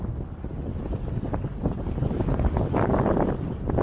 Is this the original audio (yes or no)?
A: yes